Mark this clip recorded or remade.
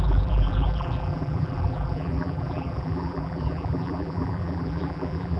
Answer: remade